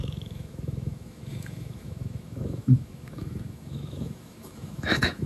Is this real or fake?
fake